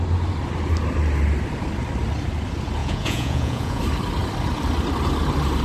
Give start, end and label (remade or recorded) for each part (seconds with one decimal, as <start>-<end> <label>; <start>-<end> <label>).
0.0-2.8 recorded; 2.8-3.8 remade; 3.8-5.6 recorded